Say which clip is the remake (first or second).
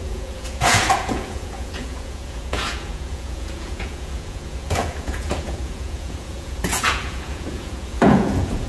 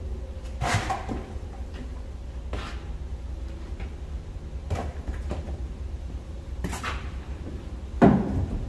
first